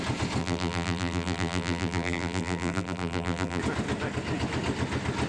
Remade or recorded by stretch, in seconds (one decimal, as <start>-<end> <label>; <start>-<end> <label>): 0.0-0.4 recorded; 0.4-3.6 remade; 3.6-5.3 recorded